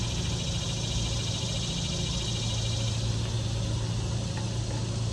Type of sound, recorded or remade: recorded